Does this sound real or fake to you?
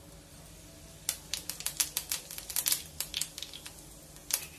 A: real